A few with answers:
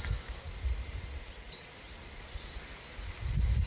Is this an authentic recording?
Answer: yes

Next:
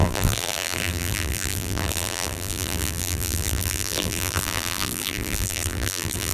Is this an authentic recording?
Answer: no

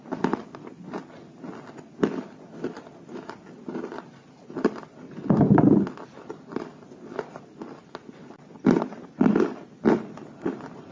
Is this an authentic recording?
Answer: yes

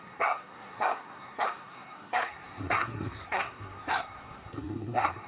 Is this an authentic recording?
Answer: no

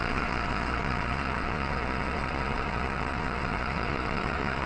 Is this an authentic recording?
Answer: no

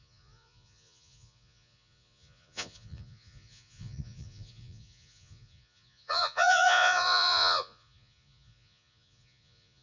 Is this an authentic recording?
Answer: no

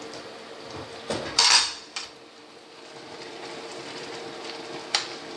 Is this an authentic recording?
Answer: no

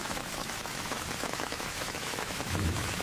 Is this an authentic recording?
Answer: no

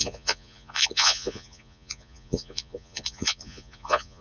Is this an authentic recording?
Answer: no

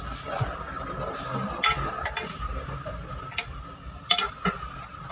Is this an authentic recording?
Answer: yes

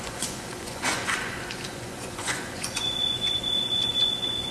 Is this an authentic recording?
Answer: no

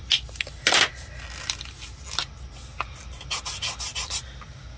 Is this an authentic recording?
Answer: yes